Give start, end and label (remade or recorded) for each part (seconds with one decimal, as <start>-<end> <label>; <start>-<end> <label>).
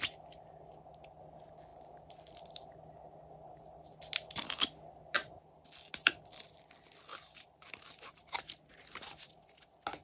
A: 0.0-7.1 recorded; 7.1-9.6 remade; 9.6-10.0 recorded